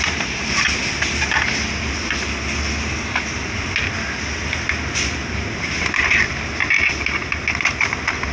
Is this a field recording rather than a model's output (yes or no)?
yes